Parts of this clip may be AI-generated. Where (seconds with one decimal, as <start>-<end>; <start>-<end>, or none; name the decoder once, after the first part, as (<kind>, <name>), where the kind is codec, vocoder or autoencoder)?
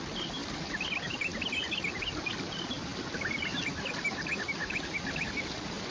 none